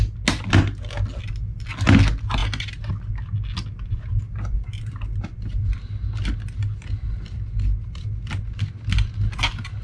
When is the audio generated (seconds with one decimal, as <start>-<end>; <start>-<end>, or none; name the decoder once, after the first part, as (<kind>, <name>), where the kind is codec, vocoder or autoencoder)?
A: none